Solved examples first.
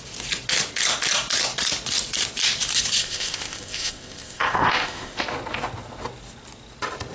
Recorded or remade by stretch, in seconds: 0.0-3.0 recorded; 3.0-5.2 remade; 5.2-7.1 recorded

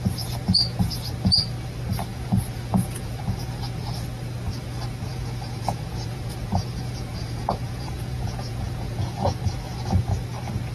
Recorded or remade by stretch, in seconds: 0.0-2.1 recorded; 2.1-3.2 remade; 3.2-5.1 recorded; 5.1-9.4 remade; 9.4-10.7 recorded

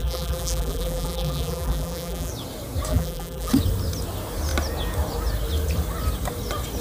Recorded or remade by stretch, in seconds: 0.0-2.3 remade; 2.3-2.9 recorded; 2.9-3.5 remade; 3.5-6.8 recorded

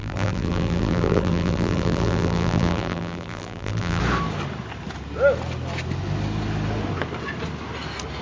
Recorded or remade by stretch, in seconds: 0.0-4.0 remade; 4.0-8.2 recorded

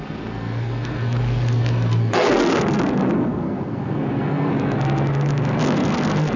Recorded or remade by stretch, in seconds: 0.0-6.4 remade

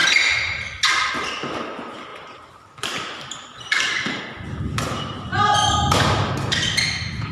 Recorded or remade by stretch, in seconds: 0.0-2.1 recorded; 2.1-4.2 remade; 4.2-5.3 recorded; 5.3-6.3 remade; 6.3-7.3 recorded

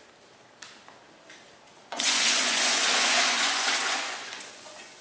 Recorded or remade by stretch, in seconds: 0.0-1.8 recorded; 1.8-5.0 remade